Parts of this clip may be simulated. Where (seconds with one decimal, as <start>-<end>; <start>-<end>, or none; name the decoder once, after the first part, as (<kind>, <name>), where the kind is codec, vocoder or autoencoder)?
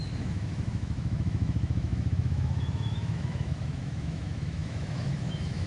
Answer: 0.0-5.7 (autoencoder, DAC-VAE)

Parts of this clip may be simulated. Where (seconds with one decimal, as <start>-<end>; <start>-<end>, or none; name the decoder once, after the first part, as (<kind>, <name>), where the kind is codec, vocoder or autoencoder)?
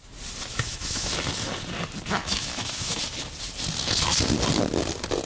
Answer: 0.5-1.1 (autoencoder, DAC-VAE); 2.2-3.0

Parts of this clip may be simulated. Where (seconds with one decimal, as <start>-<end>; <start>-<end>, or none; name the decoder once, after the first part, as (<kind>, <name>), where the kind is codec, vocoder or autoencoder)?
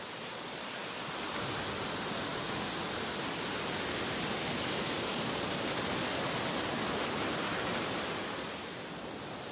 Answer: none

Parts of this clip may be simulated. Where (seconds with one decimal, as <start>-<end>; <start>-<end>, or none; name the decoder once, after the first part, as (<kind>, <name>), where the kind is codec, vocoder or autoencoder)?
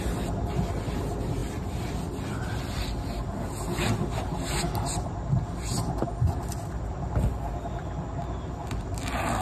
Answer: none